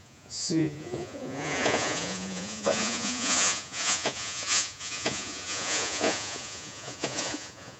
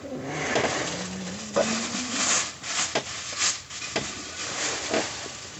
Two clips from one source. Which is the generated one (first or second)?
first